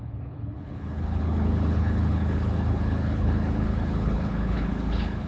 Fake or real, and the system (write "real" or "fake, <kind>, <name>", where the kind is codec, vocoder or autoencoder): fake, codec, HILCodec